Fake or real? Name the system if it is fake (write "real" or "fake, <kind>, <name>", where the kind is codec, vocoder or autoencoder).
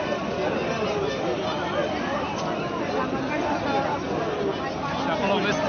real